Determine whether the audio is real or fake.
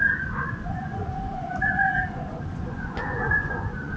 fake